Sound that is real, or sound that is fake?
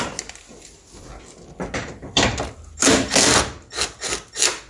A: real